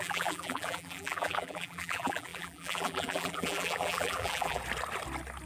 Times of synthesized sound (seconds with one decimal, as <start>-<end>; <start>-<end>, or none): 0.0-4.6